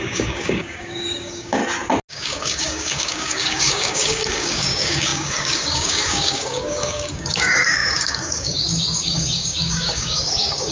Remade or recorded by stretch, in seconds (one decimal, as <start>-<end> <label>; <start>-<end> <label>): 0.0-1.6 remade; 1.6-2.1 recorded; 2.1-10.7 remade